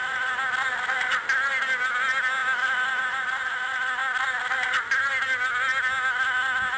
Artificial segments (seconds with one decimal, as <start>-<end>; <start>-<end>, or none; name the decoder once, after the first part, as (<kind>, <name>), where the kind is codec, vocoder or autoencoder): 2.4-3.0 (vocoder, BigVGAN v2)